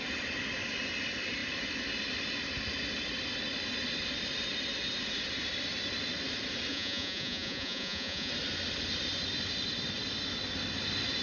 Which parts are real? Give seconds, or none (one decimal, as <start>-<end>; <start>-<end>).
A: 0.0-6.7; 8.3-11.2